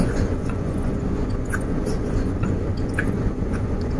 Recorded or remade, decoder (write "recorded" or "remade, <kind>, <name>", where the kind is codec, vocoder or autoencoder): remade, vocoder, Vocos